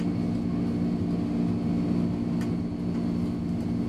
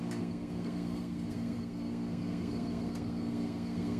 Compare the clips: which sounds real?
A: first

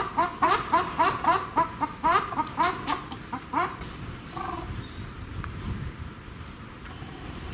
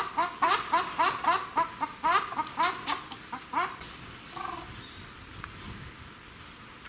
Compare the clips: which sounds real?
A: second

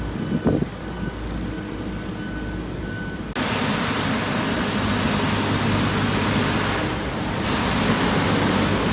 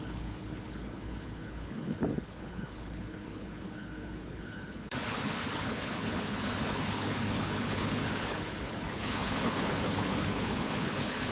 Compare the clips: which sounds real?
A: first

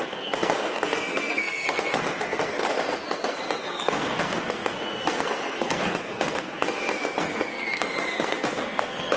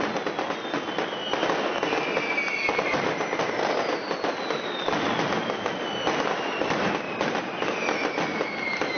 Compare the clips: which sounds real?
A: second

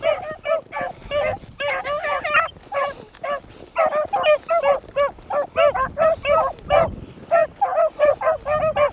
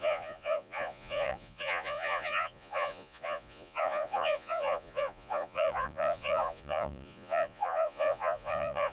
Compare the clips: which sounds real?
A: first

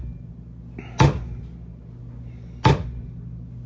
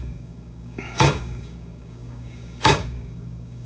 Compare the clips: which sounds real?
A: first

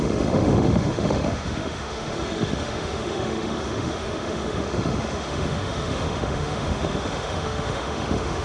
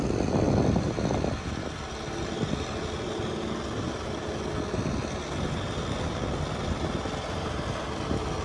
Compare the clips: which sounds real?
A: second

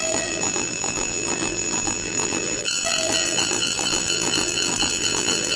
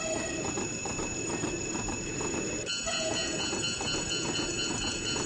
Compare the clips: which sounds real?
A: second